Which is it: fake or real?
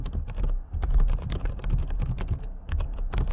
real